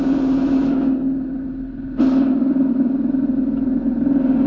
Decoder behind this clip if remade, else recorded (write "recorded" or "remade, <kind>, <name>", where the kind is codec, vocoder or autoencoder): recorded